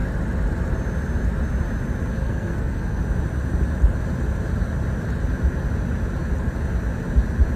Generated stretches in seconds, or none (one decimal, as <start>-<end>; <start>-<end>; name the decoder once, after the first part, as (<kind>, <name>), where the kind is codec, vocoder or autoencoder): 2.2-3.0 (codec, SNAC)